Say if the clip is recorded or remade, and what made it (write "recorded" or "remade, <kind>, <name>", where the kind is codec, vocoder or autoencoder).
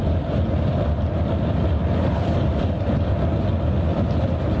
recorded